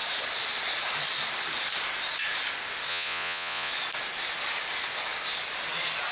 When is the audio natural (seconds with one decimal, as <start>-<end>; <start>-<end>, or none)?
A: 0.0-2.9; 3.7-6.1